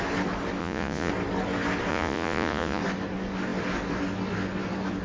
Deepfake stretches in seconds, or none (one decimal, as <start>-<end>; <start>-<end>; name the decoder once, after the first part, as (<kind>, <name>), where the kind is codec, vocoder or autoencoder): 0.6-1.1 (vocoder, Vocos); 1.9-2.8